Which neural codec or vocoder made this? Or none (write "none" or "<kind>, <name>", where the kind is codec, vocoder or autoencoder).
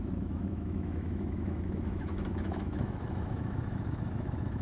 autoencoder, DAC-VAE